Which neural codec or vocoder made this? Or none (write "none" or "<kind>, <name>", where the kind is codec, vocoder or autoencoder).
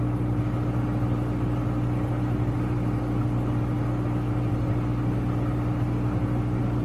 vocoder, BigVGAN v2